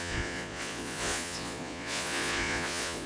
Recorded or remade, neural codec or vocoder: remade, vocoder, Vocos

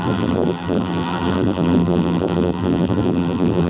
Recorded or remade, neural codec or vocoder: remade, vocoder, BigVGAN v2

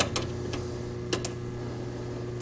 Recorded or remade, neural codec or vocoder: recorded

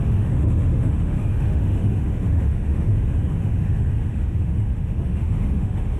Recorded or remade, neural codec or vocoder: remade, autoencoder, DAC-VAE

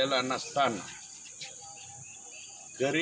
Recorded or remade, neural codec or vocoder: recorded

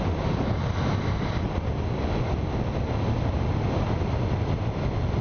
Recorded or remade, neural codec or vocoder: recorded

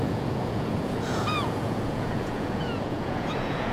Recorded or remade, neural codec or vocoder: remade, vocoder, Vocos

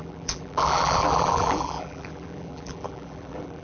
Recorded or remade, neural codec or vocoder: remade, vocoder, BigVGAN v2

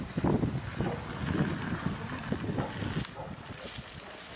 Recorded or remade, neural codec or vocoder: recorded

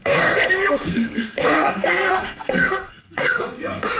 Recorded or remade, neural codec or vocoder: remade, codec, SNAC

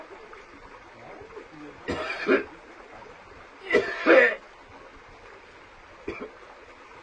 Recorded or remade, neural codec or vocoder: recorded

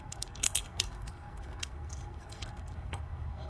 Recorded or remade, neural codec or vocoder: remade, codec, SNAC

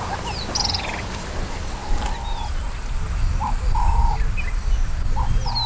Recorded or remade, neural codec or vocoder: recorded